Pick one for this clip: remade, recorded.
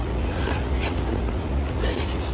remade